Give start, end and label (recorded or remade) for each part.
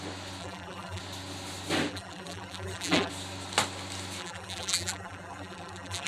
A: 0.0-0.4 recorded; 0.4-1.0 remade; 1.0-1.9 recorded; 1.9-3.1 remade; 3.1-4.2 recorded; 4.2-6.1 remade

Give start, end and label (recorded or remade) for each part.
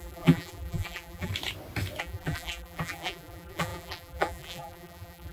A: 0.0-1.3 remade; 1.3-2.0 recorded; 2.0-5.3 remade